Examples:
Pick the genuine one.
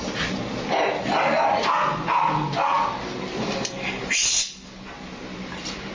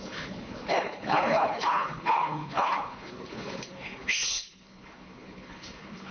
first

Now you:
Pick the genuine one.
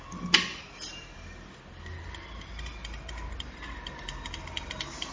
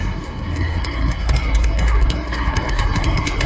first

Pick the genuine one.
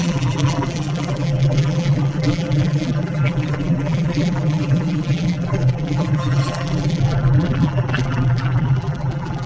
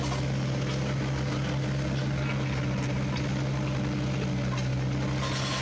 second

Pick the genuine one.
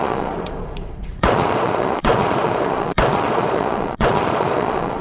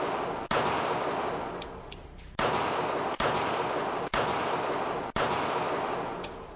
second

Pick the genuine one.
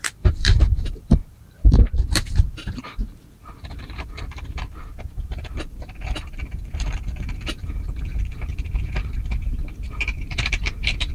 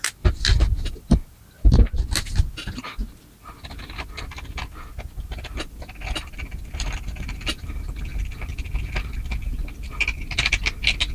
second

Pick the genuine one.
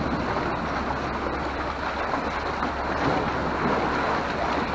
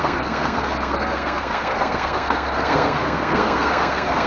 first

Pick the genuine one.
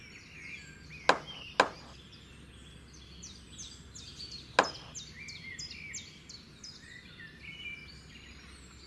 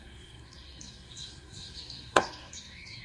first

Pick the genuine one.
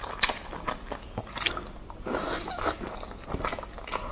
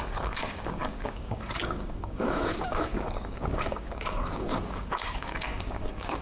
first